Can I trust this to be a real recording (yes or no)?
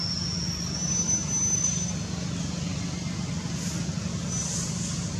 yes